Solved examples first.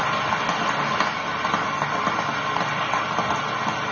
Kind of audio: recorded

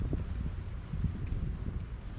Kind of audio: recorded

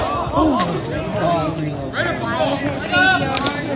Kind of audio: recorded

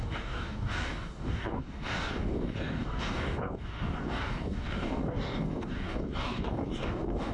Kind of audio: remade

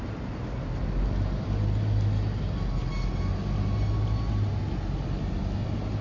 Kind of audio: recorded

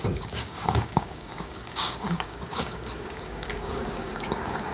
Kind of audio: remade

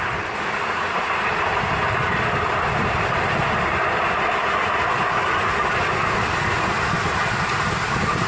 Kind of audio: recorded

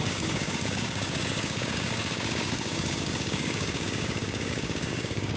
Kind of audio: remade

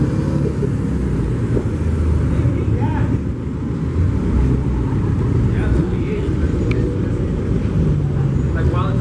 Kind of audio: recorded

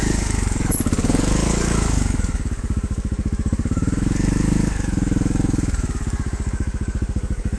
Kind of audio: remade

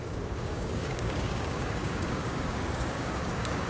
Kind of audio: remade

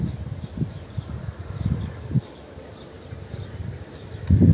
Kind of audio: recorded